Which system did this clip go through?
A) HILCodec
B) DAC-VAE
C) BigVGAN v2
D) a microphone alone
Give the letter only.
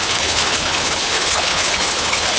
A